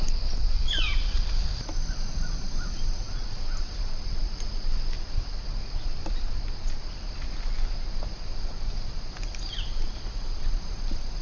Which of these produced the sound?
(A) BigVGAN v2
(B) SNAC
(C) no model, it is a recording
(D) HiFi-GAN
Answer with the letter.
A